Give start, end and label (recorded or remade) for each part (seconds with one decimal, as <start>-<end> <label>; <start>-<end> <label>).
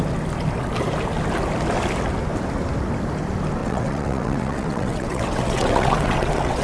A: 0.0-3.6 recorded; 3.6-6.6 remade